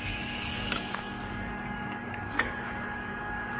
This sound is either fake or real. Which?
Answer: fake